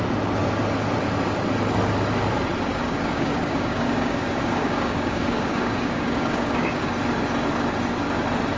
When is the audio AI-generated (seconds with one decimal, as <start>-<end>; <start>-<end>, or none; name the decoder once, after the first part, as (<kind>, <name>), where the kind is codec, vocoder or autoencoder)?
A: 2.7-6.9 (codec, DAC)